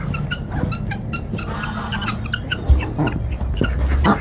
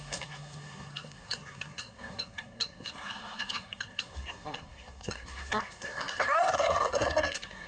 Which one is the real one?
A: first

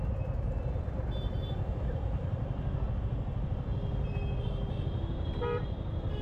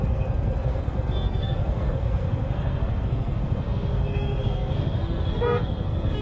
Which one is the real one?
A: first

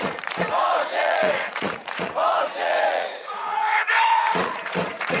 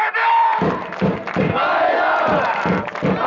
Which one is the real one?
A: second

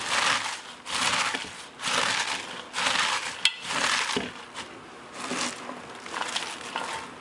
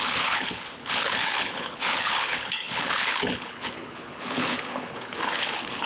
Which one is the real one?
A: first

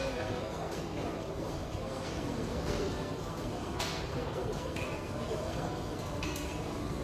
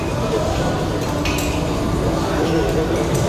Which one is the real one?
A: second